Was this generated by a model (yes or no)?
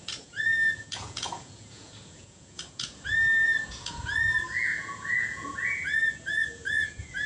yes